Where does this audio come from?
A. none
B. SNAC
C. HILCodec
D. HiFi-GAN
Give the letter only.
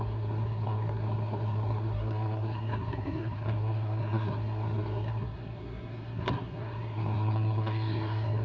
B